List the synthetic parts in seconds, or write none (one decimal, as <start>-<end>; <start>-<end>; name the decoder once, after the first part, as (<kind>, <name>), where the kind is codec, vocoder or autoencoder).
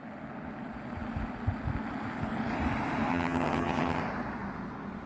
3.1-4.0 (vocoder, HiFi-GAN)